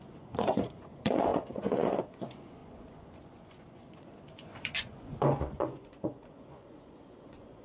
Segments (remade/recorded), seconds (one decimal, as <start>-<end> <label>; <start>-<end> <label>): 0.0-7.6 remade